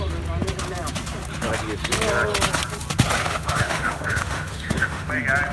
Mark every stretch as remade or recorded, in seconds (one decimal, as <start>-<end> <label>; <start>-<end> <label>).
0.0-3.2 recorded; 3.2-5.1 remade; 5.1-5.5 recorded